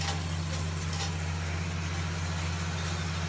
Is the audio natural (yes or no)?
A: yes